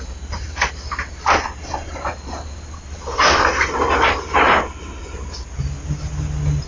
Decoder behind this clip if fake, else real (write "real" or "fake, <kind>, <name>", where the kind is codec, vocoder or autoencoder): real